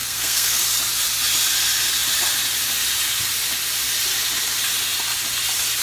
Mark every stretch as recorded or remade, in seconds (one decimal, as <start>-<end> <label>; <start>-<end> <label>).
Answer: 0.0-0.6 remade; 0.6-5.8 recorded